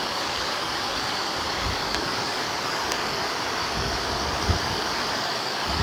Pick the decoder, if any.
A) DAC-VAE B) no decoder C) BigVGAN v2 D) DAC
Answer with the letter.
D